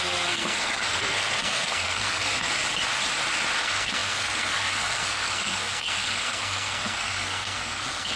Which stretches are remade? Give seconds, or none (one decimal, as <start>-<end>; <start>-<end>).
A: 0.0-2.6; 3.6-8.2